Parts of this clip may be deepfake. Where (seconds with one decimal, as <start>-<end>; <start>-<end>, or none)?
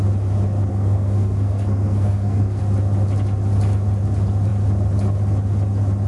0.7-2.6